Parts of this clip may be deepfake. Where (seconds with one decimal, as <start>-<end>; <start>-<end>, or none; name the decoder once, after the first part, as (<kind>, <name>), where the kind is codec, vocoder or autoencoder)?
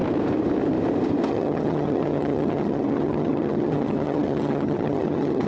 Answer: 1.3-5.5 (vocoder, HiFi-GAN)